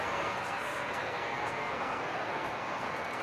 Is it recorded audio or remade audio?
remade